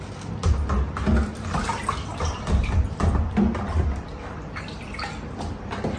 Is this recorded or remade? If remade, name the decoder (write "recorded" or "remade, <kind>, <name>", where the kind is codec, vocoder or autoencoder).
recorded